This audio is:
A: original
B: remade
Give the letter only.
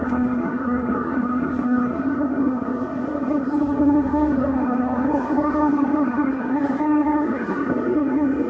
B